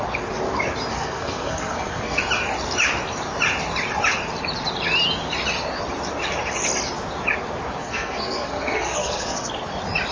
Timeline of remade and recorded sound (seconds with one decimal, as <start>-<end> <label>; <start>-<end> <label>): 0.0-0.9 recorded; 0.9-2.2 remade; 2.2-7.8 recorded; 7.8-9.5 remade; 9.5-10.1 recorded